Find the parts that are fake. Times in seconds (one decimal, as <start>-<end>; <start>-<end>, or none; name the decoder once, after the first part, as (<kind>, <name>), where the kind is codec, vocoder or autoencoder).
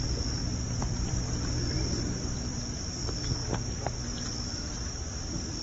0.4-2.9 (vocoder, BigVGAN v2)